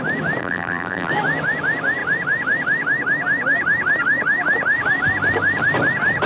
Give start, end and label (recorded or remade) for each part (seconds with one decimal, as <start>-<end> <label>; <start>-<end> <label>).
0.0-0.4 recorded; 0.4-1.1 remade; 1.1-6.3 recorded